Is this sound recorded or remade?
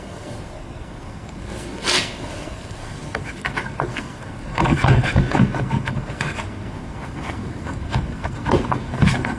remade